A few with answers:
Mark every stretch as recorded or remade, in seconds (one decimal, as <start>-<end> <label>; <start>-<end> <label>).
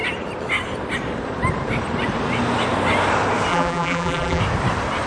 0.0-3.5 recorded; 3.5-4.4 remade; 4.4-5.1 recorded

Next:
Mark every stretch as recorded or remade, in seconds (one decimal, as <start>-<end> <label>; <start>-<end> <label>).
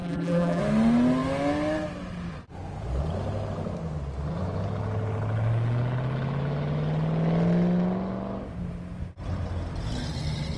0.0-0.6 remade; 0.6-10.6 recorded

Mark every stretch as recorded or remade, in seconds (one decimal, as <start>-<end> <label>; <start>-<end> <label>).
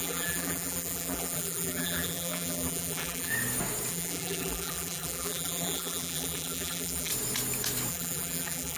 0.0-3.3 remade; 3.3-3.9 recorded; 3.9-7.1 remade; 7.1-7.9 recorded; 7.9-8.8 remade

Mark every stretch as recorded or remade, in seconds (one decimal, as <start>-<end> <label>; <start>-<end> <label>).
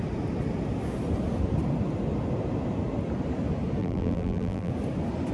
0.0-3.8 recorded; 3.8-4.7 remade; 4.7-5.3 recorded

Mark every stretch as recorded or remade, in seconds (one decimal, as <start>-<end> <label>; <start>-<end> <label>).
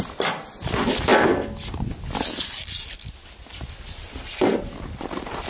0.0-1.1 remade; 1.1-4.4 recorded; 4.4-5.5 remade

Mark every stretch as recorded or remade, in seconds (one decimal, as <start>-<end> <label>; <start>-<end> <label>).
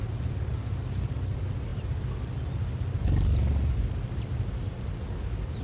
0.0-5.6 recorded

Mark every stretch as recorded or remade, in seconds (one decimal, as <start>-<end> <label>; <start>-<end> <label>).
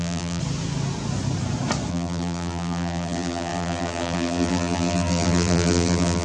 0.0-0.4 remade; 0.4-1.9 recorded; 1.9-6.2 remade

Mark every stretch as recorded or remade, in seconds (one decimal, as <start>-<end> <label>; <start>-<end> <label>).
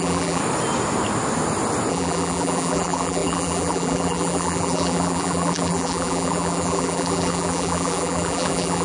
0.0-0.4 remade; 0.4-1.9 recorded; 1.9-8.8 remade